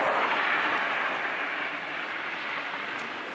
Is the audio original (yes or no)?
yes